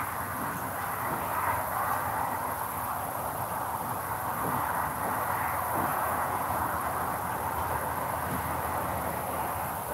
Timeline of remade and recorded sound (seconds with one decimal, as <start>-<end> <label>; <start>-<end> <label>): 0.0-5.9 recorded; 5.9-6.7 remade; 6.7-9.9 recorded